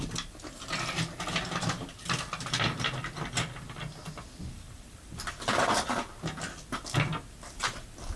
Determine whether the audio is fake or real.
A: real